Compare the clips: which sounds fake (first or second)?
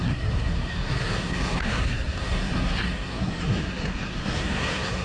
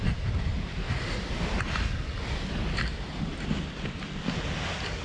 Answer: first